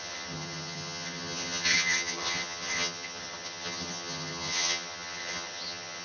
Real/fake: fake